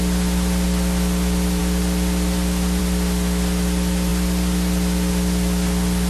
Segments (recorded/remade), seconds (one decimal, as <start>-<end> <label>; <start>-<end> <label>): 0.0-6.1 recorded